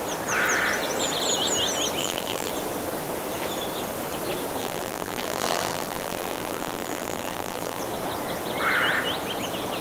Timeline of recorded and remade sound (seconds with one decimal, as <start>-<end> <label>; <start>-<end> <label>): 0.0-2.0 recorded; 2.0-2.5 remade; 2.5-4.6 recorded; 4.6-7.8 remade; 7.8-9.8 recorded